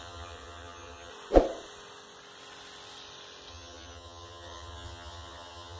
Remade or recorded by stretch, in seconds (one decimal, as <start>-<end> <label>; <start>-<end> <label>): 0.0-1.1 remade; 1.1-3.5 recorded; 3.5-5.8 remade

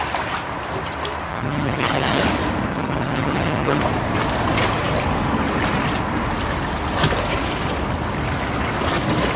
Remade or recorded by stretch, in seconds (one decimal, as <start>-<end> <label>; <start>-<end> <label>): 0.0-1.3 recorded; 1.3-2.2 remade; 2.2-2.7 recorded; 2.7-3.8 remade; 3.8-9.4 recorded

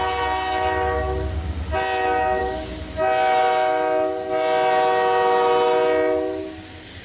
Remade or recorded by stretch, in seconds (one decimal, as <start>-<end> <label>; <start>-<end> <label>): 0.0-7.0 recorded

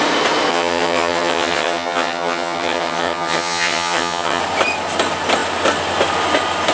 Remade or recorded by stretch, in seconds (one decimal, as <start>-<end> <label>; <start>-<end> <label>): 0.0-0.5 recorded; 0.5-4.4 remade; 4.4-6.7 recorded